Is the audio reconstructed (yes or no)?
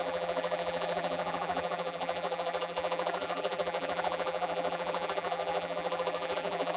yes